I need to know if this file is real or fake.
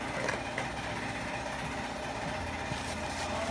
real